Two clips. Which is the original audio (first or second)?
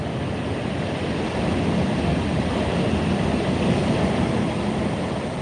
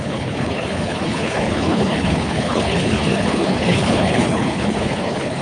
first